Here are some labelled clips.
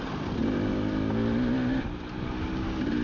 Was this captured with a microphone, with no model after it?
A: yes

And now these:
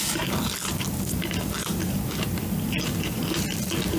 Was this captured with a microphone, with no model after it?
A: yes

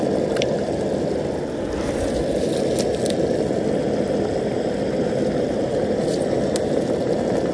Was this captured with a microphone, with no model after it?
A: yes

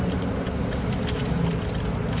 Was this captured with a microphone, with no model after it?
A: yes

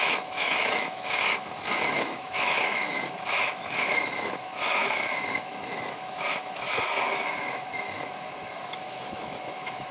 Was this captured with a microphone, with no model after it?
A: no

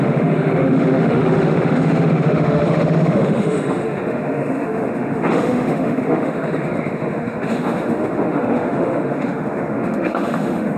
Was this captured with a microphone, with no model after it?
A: no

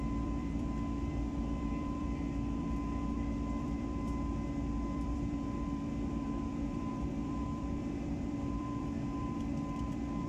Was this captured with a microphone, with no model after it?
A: no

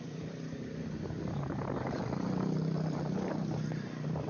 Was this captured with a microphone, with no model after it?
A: no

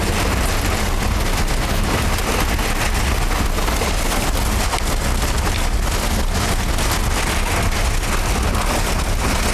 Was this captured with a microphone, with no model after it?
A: yes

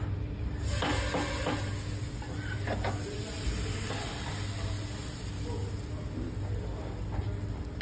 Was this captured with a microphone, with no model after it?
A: yes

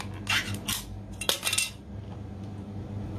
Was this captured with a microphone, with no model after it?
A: yes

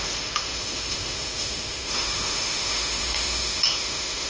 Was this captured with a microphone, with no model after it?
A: no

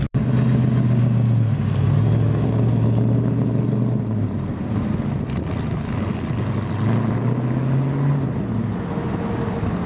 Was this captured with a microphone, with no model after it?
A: yes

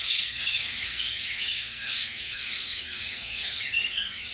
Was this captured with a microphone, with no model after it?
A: no